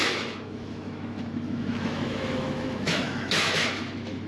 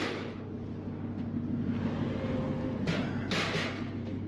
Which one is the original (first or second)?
second